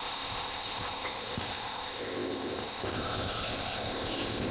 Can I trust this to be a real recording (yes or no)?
no